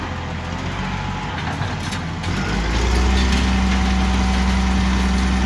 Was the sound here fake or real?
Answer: real